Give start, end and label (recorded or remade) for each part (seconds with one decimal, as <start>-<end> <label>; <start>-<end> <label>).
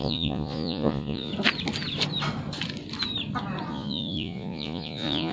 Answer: 0.0-1.3 remade; 1.3-3.7 recorded; 3.7-5.3 remade